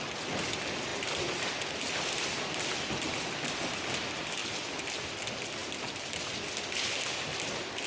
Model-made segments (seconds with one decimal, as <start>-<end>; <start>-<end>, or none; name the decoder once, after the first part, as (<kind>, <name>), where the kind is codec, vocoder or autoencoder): none